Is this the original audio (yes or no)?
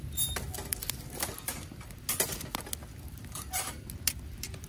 yes